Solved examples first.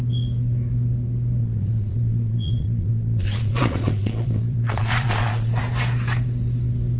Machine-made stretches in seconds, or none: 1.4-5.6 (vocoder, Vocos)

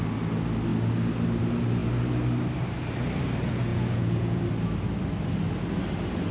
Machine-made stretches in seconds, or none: 3.7-4.4 (vocoder, Vocos)